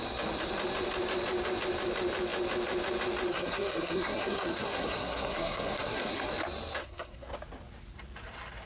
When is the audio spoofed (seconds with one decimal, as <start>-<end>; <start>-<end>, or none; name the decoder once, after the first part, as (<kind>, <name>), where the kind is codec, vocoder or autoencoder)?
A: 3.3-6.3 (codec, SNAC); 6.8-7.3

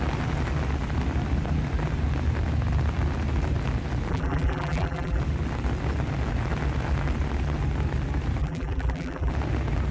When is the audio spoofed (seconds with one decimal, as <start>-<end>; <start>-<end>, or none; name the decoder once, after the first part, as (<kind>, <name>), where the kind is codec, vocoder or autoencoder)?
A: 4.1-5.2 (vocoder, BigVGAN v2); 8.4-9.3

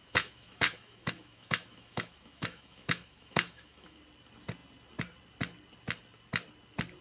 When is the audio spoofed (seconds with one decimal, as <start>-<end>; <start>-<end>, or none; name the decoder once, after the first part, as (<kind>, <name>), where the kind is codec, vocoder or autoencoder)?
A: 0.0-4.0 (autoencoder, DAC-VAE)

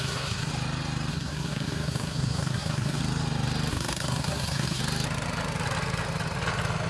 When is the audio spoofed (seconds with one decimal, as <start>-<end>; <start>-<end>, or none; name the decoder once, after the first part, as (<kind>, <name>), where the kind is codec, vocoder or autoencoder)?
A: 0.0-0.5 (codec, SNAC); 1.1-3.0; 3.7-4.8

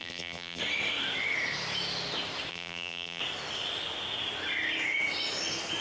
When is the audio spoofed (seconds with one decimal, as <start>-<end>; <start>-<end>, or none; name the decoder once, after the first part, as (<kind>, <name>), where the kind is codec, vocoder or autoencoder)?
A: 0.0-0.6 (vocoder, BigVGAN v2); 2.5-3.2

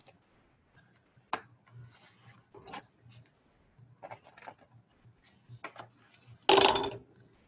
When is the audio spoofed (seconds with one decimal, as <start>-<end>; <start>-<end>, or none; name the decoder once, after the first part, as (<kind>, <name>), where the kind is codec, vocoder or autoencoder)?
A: none